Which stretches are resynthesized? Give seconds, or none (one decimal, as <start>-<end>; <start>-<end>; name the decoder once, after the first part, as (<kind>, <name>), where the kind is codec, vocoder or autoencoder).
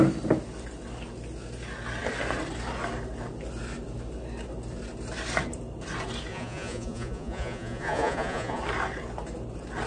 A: 6.3-8.6 (vocoder, Vocos)